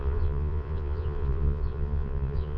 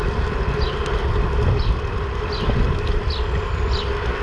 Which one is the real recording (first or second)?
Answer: second